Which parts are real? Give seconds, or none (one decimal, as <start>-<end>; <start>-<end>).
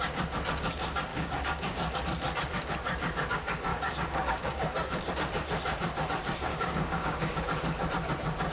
0.0-1.1; 2.0-3.7; 5.1-6.5; 7.4-8.5